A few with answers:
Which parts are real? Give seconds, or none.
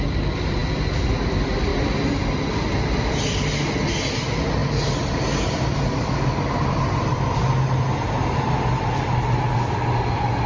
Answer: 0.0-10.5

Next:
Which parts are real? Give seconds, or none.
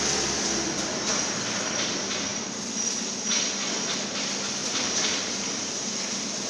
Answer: 0.0-4.6; 5.7-6.5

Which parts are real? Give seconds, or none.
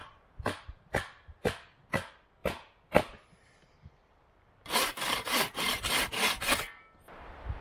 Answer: 0.8-2.4; 6.1-7.6